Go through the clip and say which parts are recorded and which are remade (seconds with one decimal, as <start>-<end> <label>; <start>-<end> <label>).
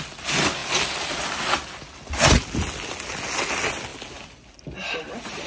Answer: 0.0-5.5 recorded